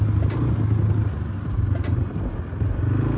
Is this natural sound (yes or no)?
yes